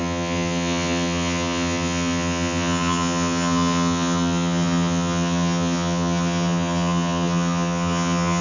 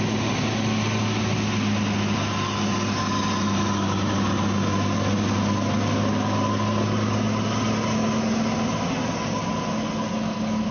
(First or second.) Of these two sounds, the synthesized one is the first